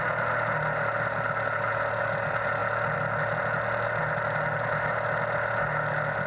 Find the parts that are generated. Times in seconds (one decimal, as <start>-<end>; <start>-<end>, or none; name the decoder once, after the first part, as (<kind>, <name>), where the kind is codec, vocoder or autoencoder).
none